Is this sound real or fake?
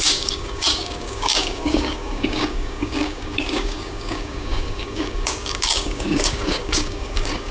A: fake